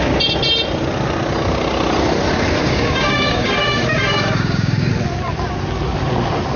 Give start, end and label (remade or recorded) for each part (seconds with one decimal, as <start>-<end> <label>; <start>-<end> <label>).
0.0-2.6 recorded; 2.6-4.9 remade; 4.9-6.6 recorded